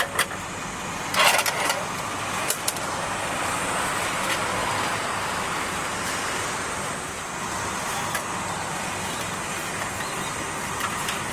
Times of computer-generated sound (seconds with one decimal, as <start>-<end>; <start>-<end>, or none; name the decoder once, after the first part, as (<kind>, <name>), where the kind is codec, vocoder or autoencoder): 4.6-5.9 (vocoder, BigVGAN v2); 9.6-11.3